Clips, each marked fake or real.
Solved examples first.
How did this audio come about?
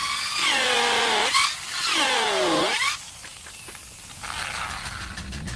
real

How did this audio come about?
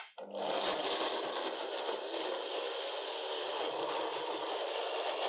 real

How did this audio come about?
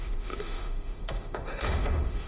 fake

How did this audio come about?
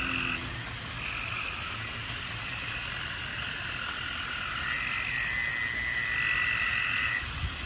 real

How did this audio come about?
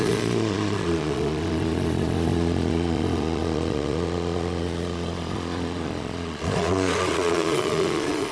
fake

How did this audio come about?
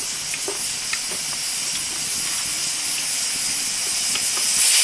real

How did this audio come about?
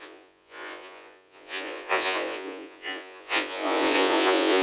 fake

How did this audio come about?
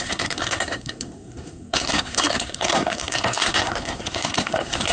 fake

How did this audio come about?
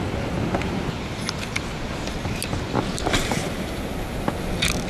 real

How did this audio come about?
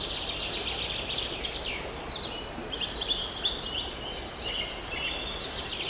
real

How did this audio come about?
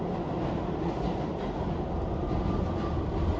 real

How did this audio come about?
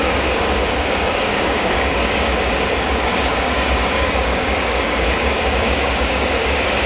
fake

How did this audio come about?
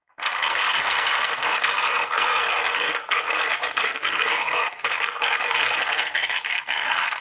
fake